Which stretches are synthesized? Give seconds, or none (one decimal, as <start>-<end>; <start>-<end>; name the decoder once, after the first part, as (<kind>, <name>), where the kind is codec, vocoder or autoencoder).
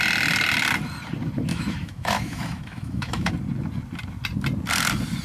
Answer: 1.5-3.3 (autoencoder, DAC-VAE)